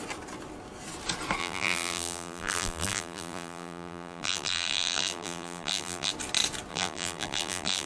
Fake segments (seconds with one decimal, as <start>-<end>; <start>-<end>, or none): 1.4-6.1; 6.7-7.9

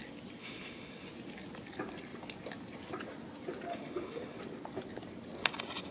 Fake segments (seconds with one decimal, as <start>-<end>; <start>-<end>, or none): 0.4-1.1; 3.7-4.4

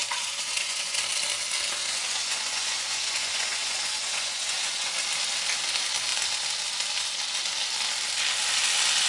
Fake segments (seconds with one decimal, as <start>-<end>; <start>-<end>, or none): 0.0-1.0; 1.8-4.9

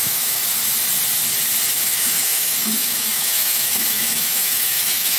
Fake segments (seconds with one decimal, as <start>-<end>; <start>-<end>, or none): 0.0-0.4; 1.7-5.2

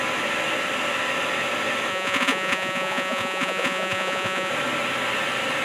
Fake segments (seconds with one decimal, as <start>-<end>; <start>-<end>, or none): 1.9-4.5

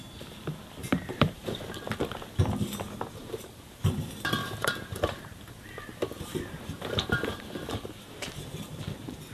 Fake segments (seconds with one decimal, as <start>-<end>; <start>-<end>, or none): 0.8-1.6; 3.2-3.8; 4.4-8.8